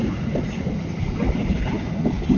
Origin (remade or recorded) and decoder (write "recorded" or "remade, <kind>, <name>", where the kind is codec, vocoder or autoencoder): recorded